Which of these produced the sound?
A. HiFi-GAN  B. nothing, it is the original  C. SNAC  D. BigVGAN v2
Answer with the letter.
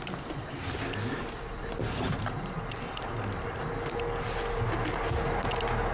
B